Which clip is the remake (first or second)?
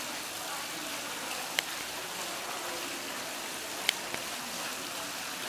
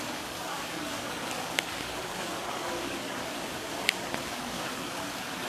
second